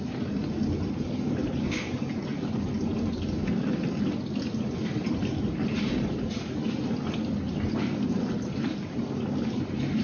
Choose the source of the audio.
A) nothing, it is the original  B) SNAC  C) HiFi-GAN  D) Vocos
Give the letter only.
A